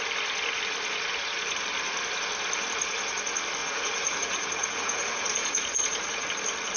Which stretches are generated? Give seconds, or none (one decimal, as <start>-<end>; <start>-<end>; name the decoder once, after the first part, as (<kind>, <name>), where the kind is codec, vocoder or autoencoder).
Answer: 3.6-6.3 (vocoder, Vocos)